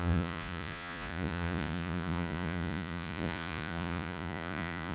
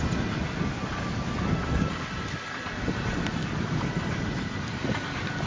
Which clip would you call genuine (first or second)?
second